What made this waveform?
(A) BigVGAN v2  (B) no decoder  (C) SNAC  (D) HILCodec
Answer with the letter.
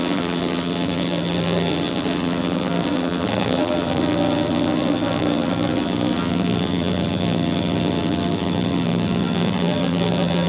A